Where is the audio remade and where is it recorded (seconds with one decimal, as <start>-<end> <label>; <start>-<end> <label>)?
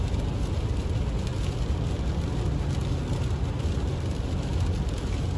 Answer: 0.0-5.4 recorded